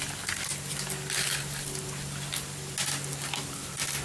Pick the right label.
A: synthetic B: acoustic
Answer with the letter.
B